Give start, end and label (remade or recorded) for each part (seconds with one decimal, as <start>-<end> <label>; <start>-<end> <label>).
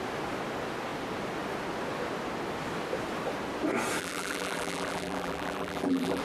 0.0-4.0 recorded; 4.0-6.2 remade